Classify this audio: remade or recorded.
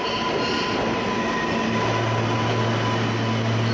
recorded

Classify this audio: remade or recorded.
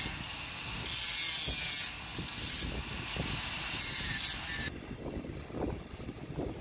recorded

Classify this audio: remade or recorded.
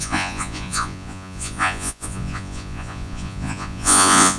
remade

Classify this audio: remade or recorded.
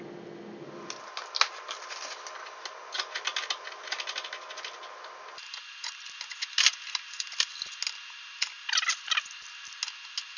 recorded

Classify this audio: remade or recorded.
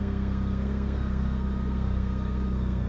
remade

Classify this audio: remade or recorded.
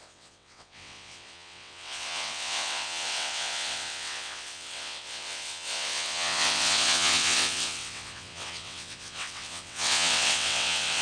remade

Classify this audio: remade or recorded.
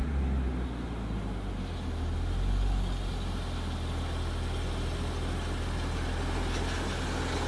recorded